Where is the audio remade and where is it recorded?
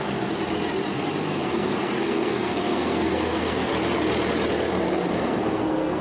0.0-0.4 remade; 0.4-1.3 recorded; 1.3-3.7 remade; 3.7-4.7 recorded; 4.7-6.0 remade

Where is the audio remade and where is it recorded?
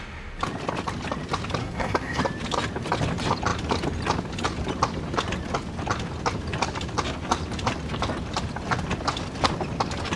0.0-1.6 recorded; 1.6-2.2 remade; 2.2-10.2 recorded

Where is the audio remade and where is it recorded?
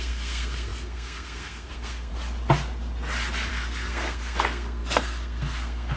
0.0-2.1 remade; 2.1-3.5 recorded; 3.5-6.0 remade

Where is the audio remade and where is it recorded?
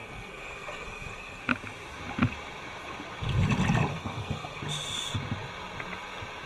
0.0-1.4 remade; 1.4-3.9 recorded; 3.9-4.6 remade; 4.6-6.5 recorded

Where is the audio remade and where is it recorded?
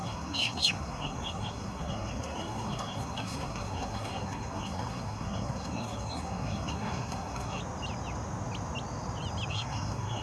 0.0-7.6 remade; 7.6-9.5 recorded; 9.5-10.2 remade